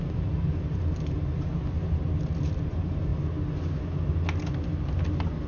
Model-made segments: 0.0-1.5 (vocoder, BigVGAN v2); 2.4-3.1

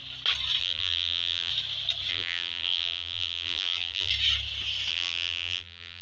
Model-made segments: 0.6-1.5 (vocoder, BigVGAN v2); 2.1-4.1; 4.9-6.0

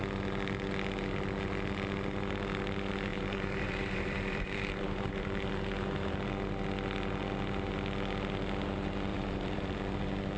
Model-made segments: 3.1-5.5 (vocoder, BigVGAN v2); 9.1-10.4

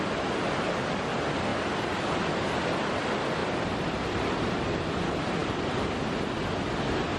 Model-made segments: 1.5-2.5 (vocoder, BigVGAN v2); 3.4-3.9

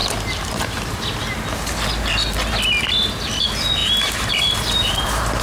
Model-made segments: 0.0-0.5 (vocoder, BigVGAN v2); 3.8-5.4

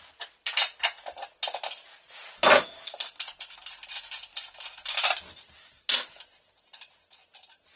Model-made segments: none

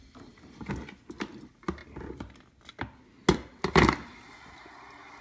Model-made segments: none